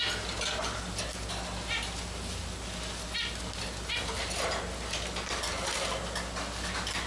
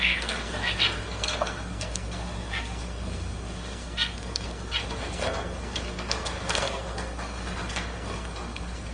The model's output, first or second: second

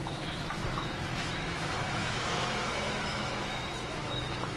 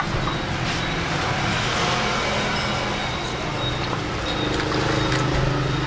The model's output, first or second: first